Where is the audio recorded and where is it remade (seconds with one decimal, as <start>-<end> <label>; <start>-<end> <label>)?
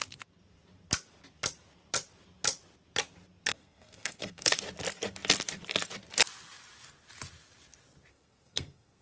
0.0-3.5 recorded; 3.5-4.6 remade; 4.6-8.1 recorded; 8.1-9.0 remade